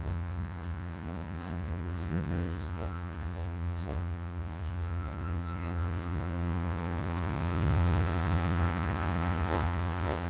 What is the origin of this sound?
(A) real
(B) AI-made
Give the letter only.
B